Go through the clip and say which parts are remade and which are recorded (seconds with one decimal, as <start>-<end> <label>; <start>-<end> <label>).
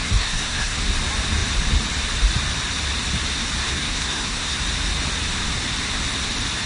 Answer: 0.0-0.8 remade; 0.8-3.6 recorded; 3.6-4.6 remade; 4.6-6.7 recorded